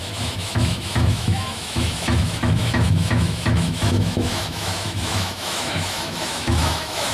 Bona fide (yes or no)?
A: no